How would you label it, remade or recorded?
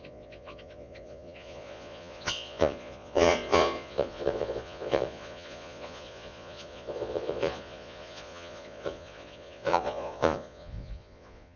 remade